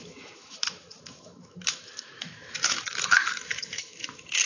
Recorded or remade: remade